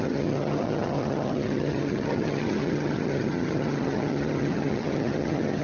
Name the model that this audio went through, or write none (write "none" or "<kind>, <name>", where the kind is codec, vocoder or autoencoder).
vocoder, HiFi-GAN